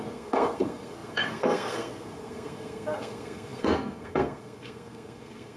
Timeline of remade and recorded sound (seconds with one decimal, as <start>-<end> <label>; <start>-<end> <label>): 0.0-5.6 remade